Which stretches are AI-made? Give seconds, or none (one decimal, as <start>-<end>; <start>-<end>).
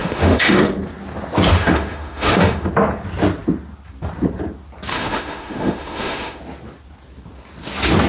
0.0-0.6; 1.5-2.7; 4.9-6.4